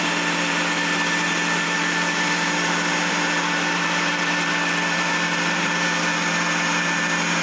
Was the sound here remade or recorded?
remade